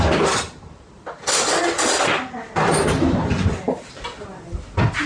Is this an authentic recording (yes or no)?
yes